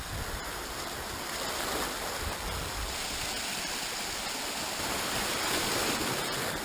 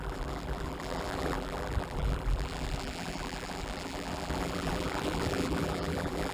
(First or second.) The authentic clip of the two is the first